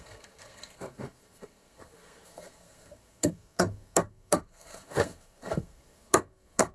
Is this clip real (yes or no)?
no